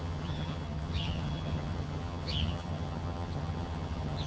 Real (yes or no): no